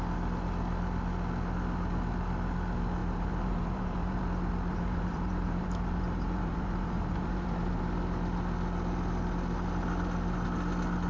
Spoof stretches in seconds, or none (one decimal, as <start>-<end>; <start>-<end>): 3.0-4.2; 4.7-7.8